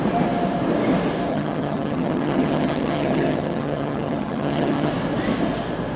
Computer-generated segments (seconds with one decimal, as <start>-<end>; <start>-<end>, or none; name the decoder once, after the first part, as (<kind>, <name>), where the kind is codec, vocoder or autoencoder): 1.3-4.9 (vocoder, HiFi-GAN)